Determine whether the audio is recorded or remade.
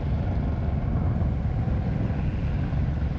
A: recorded